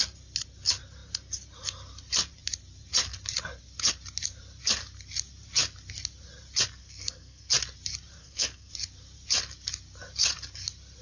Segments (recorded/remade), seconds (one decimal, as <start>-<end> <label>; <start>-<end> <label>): 0.0-6.8 recorded; 6.8-7.5 remade; 7.5-8.2 recorded; 8.2-8.7 remade; 8.7-11.0 recorded